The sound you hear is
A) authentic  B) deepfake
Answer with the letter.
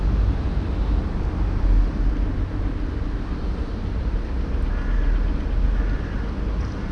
A